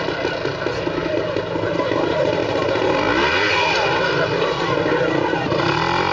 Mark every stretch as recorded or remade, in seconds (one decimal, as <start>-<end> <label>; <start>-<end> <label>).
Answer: 0.0-6.1 recorded